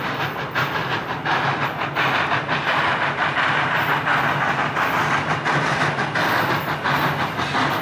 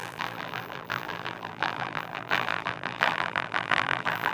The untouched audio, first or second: first